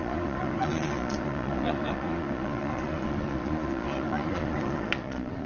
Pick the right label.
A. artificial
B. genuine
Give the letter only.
A